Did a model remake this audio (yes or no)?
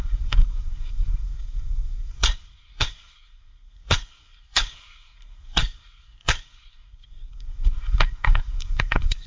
yes